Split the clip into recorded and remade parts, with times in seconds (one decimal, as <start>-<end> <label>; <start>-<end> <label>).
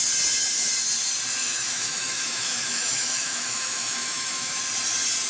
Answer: 0.0-1.4 recorded; 1.4-4.6 remade; 4.6-5.3 recorded